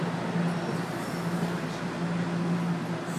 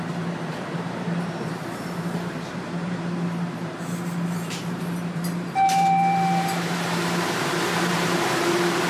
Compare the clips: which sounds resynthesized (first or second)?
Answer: second